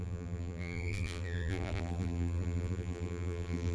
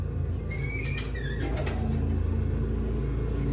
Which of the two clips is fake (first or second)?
first